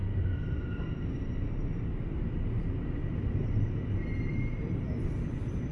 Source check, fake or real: real